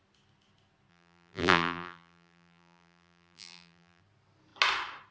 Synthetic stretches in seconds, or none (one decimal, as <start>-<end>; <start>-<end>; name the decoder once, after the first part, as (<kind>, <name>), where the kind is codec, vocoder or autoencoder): 0.9-4.0 (vocoder, BigVGAN v2)